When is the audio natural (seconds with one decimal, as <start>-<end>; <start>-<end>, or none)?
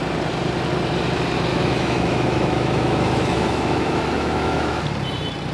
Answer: 0.0-1.5; 4.8-5.5